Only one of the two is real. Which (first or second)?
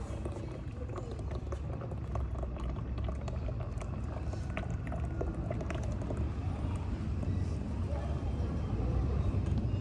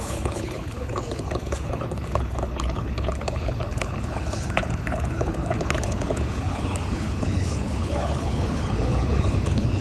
first